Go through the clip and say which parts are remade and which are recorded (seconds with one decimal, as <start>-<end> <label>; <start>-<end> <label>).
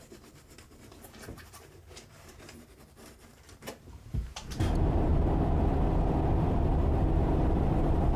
0.0-5.1 remade; 5.1-6.4 recorded; 6.4-8.2 remade